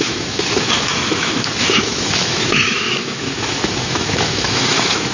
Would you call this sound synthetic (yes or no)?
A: yes